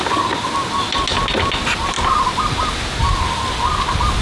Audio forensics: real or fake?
real